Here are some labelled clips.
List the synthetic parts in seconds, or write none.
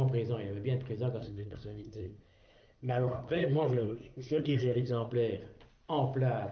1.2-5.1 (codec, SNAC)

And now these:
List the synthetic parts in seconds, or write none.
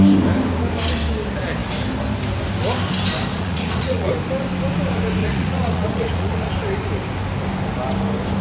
3.3-4.1 (vocoder, Vocos); 5.2-6.5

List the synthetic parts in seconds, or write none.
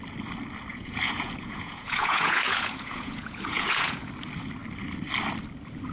0.7-4.1 (vocoder, Vocos)